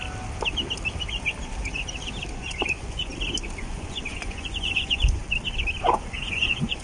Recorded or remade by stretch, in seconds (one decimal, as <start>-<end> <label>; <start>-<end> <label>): 0.0-2.3 recorded; 2.3-3.1 remade; 3.1-3.6 recorded; 3.6-5.2 remade; 5.2-5.8 recorded; 5.8-6.8 remade